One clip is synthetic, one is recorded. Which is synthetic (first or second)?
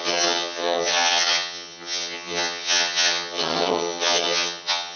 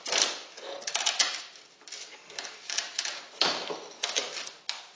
first